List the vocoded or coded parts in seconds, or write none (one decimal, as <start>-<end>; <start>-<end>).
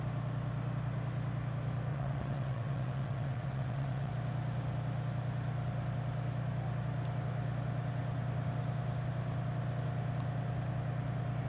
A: 1.9-4.1